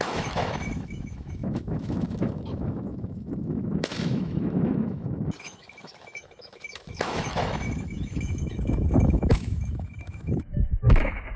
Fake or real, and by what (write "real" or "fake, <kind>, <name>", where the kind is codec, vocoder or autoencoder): fake, autoencoder, DAC-VAE